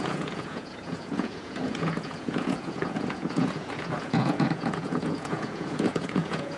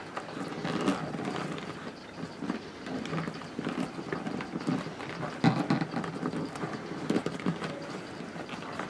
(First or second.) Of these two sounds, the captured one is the second